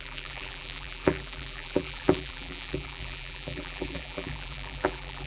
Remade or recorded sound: remade